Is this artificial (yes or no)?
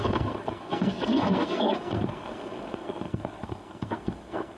yes